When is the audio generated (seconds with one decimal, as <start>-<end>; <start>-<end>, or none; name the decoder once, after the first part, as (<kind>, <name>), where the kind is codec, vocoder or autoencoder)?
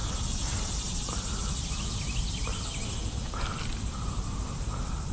none